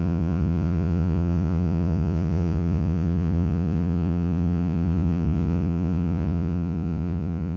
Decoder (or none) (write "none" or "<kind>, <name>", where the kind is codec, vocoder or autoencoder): vocoder, Vocos